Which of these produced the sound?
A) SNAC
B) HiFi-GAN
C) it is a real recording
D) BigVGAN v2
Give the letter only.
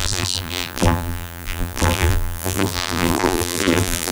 D